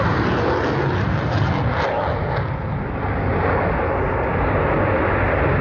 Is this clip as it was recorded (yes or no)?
yes